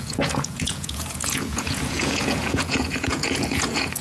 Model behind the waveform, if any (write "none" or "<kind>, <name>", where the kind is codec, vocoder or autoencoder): vocoder, Vocos